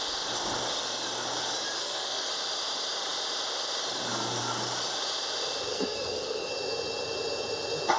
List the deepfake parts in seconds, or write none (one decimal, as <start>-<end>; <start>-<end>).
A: 1.8-2.3; 5.7-6.5